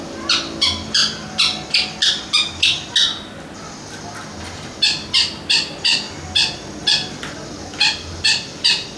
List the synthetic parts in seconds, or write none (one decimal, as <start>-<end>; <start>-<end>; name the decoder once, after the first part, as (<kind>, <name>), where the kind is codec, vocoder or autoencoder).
0.0-1.0 (vocoder, BigVGAN v2); 5.5-5.9; 6.8-9.0